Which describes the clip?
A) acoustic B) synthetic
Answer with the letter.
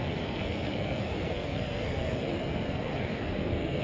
B